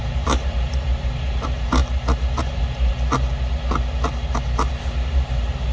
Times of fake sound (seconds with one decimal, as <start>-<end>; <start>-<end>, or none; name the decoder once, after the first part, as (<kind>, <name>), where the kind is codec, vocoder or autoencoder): 0.0-1.8 (vocoder, BigVGAN v2); 2.4-2.9; 4.7-5.7